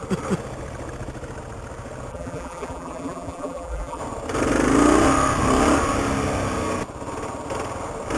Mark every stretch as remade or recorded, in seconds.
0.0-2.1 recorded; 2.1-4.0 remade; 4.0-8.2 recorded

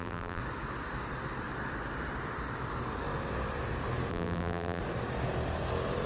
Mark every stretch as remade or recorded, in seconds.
0.0-0.4 remade; 0.4-4.1 recorded; 4.1-4.8 remade; 4.8-6.1 recorded